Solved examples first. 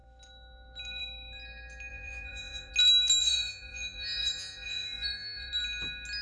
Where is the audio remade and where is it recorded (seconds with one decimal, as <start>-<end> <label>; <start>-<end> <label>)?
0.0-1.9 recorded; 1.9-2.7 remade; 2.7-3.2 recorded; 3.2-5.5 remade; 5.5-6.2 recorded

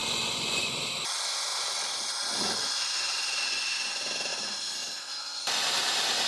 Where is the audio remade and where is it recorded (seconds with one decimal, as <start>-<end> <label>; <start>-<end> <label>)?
0.0-0.8 remade; 0.8-6.3 recorded

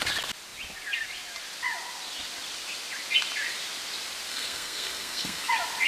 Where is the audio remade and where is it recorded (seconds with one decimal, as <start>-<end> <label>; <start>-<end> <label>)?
0.0-4.3 recorded; 4.3-5.5 remade; 5.5-5.9 recorded

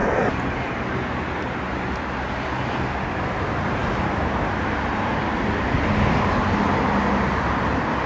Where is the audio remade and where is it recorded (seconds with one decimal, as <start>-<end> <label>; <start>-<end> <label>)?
0.0-8.1 recorded

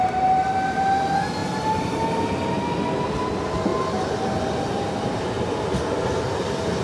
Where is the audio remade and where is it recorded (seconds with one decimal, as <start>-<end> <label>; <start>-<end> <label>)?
0.0-6.8 recorded